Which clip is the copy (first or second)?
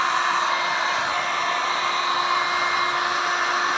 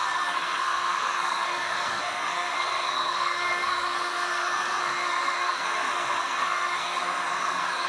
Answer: second